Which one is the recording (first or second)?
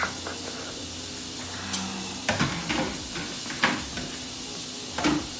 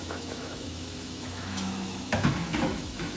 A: first